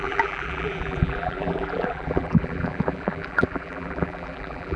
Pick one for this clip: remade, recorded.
remade